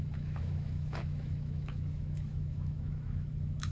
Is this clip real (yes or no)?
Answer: no